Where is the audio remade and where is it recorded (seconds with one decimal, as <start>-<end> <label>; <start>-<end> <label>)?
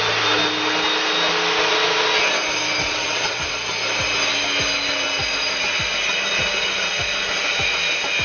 0.0-2.8 recorded; 2.8-3.5 remade; 3.5-8.2 recorded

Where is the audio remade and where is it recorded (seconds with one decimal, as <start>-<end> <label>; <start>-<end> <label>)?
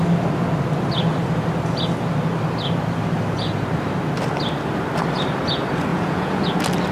0.0-5.9 recorded; 5.9-6.5 remade; 6.5-6.9 recorded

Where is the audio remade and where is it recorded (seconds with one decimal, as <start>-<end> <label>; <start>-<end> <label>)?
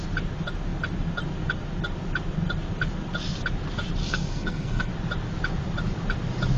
0.0-4.0 recorded; 4.0-4.9 remade; 4.9-6.6 recorded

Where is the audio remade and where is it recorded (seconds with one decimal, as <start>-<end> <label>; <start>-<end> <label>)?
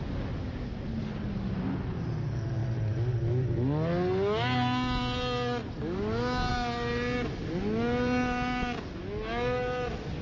0.0-10.2 recorded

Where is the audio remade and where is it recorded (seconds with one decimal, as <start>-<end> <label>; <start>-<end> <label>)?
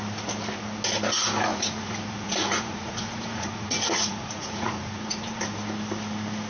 0.0-1.5 recorded; 1.5-5.4 remade; 5.4-6.5 recorded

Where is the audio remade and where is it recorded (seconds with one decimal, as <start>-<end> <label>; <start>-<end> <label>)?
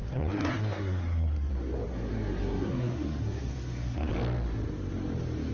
0.0-1.5 remade; 1.5-1.9 recorded; 1.9-4.1 remade; 4.1-5.5 recorded